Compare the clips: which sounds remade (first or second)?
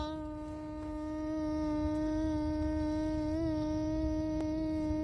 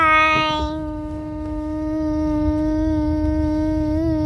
second